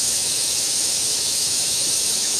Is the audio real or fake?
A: fake